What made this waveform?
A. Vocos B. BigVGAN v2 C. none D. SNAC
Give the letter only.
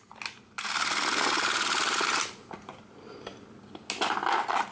C